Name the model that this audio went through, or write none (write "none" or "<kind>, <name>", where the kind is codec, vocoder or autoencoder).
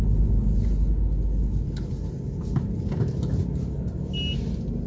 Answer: none